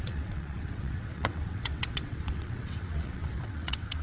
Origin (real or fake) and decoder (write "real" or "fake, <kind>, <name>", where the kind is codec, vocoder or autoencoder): fake, vocoder, WaveNeXt